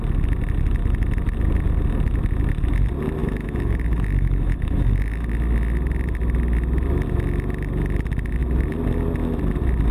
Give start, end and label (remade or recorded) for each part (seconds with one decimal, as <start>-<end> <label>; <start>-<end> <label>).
0.0-3.2 recorded; 3.2-5.3 remade; 5.3-9.9 recorded